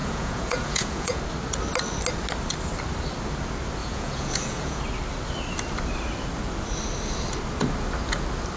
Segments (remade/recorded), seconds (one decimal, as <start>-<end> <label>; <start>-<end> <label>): 0.0-1.2 remade; 1.2-3.8 recorded; 3.8-4.8 remade; 4.8-8.6 recorded